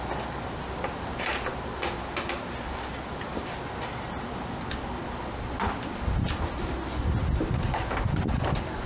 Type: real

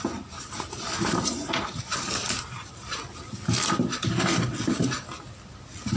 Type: real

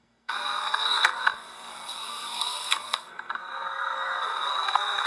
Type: fake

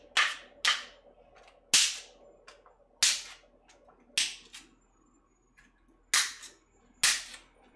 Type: real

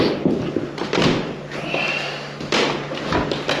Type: real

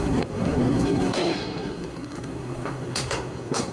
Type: fake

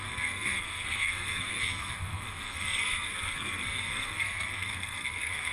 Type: fake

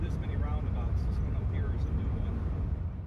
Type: real